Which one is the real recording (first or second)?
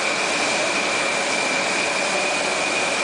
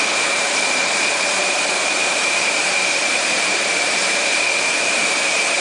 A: first